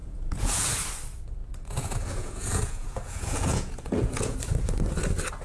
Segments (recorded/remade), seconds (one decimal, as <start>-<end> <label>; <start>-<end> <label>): 0.0-0.7 remade; 0.7-1.4 recorded; 1.4-4.4 remade; 4.4-5.4 recorded